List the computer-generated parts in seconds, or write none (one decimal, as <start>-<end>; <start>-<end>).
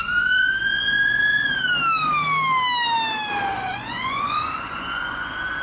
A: 0.0-1.7; 3.5-5.6